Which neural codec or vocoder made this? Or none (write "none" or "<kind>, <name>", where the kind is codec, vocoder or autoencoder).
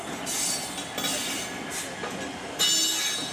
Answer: none